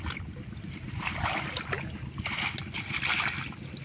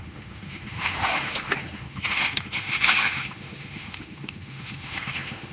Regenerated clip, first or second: second